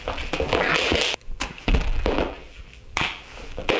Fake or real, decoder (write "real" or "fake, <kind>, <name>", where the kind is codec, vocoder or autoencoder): fake, vocoder, BigVGAN v2